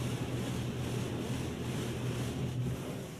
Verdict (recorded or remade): recorded